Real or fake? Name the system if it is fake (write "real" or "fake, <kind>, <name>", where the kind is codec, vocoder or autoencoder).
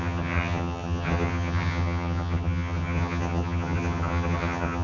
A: fake, vocoder, HiFi-GAN